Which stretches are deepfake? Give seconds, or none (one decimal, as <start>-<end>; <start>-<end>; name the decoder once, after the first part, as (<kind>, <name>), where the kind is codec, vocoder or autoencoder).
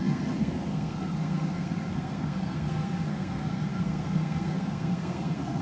0.0-5.6 (codec, SNAC)